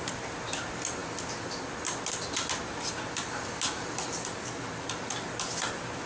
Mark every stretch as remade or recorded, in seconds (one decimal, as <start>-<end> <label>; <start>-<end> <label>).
0.0-6.1 recorded